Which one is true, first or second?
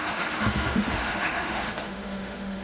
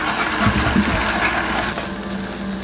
second